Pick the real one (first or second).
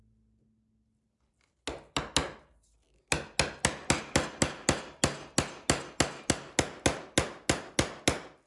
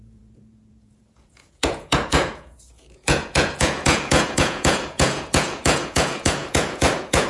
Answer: first